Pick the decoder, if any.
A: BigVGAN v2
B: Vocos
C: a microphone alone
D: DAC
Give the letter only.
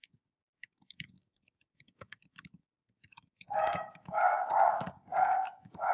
D